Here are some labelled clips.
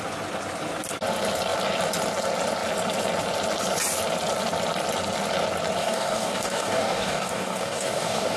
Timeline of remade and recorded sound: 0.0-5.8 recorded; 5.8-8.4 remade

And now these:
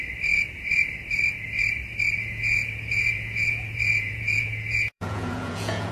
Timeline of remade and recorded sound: 0.0-2.2 recorded; 2.2-5.9 remade

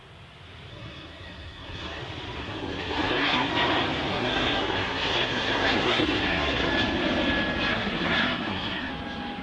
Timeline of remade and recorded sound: 0.0-0.7 recorded; 0.7-2.0 remade; 2.0-2.4 recorded; 2.4-3.5 remade; 3.5-4.1 recorded; 4.1-6.7 remade; 6.7-7.7 recorded; 7.7-8.9 remade; 8.9-9.4 recorded

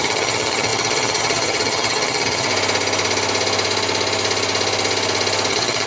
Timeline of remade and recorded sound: 0.0-2.5 remade; 2.5-5.5 recorded; 5.5-5.9 remade

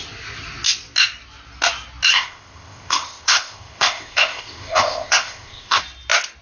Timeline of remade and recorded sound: 0.0-2.1 recorded; 2.1-5.8 remade; 5.8-6.4 recorded